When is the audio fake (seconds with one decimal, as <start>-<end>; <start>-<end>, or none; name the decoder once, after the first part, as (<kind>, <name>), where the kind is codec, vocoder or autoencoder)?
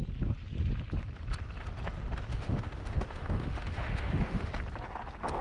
2.3-4.5 (autoencoder, DAC-VAE)